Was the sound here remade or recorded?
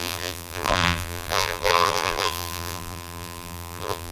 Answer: remade